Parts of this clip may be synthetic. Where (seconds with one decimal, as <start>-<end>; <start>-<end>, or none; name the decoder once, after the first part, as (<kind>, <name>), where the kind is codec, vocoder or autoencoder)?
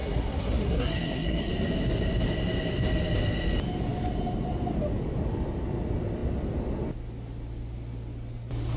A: 0.0-1.5 (codec, SNAC)